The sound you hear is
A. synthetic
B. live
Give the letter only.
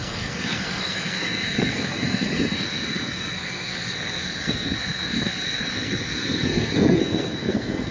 A